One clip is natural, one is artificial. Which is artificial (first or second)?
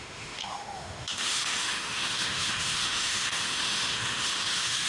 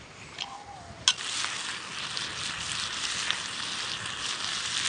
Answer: first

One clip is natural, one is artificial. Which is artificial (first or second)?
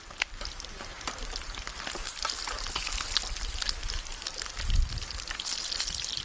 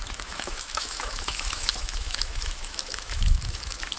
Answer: second